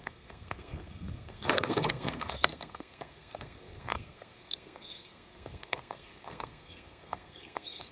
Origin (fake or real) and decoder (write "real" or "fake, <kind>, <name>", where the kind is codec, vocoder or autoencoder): fake, codec, SNAC